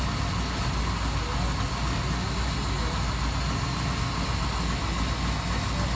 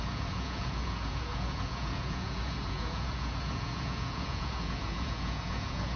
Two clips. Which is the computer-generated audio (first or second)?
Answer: second